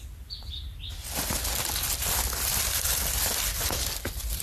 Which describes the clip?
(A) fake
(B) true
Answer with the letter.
B